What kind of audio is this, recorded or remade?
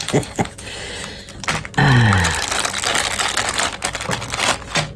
recorded